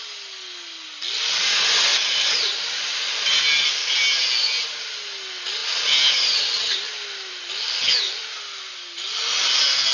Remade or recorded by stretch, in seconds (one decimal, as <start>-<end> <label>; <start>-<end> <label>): 0.0-1.9 recorded; 1.9-3.3 remade; 3.3-9.9 recorded

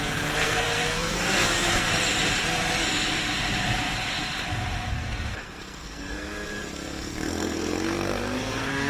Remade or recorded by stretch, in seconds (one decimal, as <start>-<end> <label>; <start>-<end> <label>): 0.0-1.9 remade; 1.9-4.9 recorded; 4.9-8.9 remade

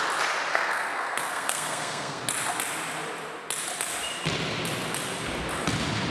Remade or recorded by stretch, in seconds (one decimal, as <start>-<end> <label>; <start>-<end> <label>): 0.0-0.5 recorded; 0.5-2.2 remade; 2.2-6.1 recorded

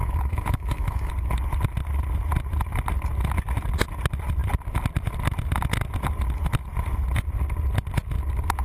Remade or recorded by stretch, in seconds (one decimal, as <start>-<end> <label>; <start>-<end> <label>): 0.0-1.1 remade; 1.1-8.6 recorded

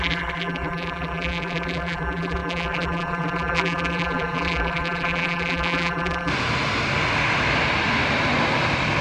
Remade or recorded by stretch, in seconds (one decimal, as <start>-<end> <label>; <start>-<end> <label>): 0.0-6.3 remade; 6.3-9.0 recorded

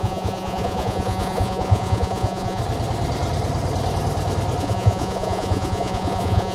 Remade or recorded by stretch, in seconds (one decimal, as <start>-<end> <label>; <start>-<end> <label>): 0.0-2.6 remade; 2.6-4.6 recorded; 4.6-6.5 remade

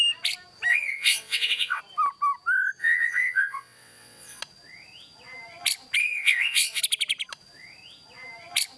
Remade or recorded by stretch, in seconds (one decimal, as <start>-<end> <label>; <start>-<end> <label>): 0.0-0.7 recorded; 0.7-1.8 remade; 1.8-2.8 recorded; 2.8-4.4 remade; 4.4-6.0 recorded; 6.0-6.8 remade; 6.8-8.8 recorded